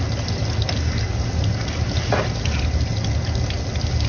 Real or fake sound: real